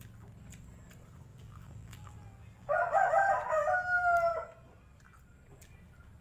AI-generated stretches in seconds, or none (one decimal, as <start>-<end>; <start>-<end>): 1.3-3.1